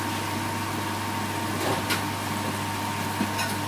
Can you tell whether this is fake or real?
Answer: real